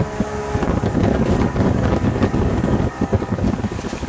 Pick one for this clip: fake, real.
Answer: fake